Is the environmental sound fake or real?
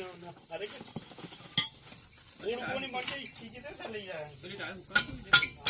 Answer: real